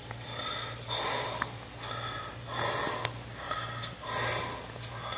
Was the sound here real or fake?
real